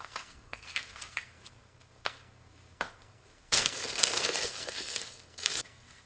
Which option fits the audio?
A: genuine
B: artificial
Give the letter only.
B